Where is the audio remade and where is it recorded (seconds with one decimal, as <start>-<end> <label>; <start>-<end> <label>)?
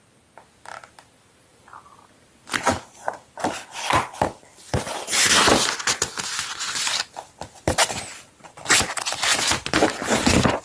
0.0-1.5 recorded; 1.5-3.9 remade; 3.9-10.6 recorded